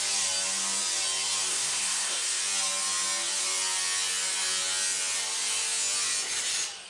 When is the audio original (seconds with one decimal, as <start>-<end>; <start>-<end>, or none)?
0.0-1.5; 2.4-6.9